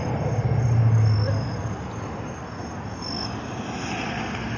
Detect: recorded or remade recorded